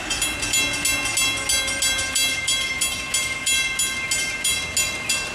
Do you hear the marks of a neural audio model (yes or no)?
no